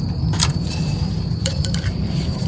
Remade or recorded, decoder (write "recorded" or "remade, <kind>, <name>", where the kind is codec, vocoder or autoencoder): remade, vocoder, BigVGAN v2